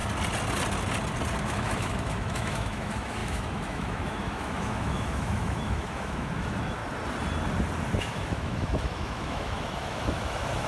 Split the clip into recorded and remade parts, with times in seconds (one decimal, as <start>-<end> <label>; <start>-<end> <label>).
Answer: 0.0-1.4 recorded; 1.4-6.8 remade; 6.8-8.0 recorded; 8.0-10.7 remade